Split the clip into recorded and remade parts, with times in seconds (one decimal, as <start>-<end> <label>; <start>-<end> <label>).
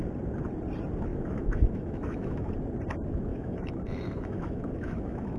0.0-1.1 recorded; 1.1-2.5 remade; 2.5-3.3 recorded; 3.3-5.4 remade